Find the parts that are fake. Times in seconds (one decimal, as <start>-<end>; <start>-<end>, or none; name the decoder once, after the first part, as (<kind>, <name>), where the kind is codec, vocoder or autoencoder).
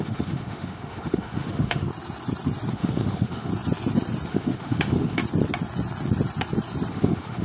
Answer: 0.0-1.9 (autoencoder, DAC-VAE); 2.7-3.5; 4.3-5.2; 6.9-7.4